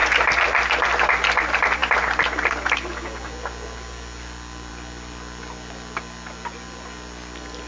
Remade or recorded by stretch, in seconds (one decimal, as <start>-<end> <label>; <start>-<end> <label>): 0.0-7.7 recorded